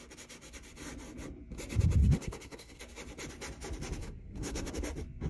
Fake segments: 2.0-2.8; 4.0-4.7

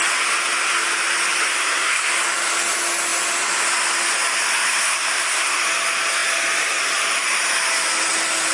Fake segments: 1.5-2.1; 4.7-5.6

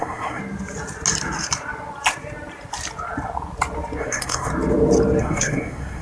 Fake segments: 0.0-0.4; 4.0-4.5; 5.2-6.0

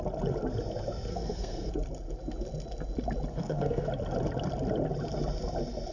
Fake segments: 1.1-1.7; 3.3-3.9